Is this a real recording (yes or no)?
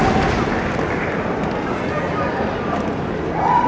yes